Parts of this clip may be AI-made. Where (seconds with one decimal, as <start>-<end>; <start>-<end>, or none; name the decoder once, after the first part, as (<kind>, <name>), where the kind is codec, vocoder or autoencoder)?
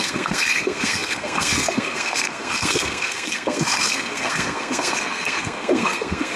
0.0-6.4 (codec, SNAC)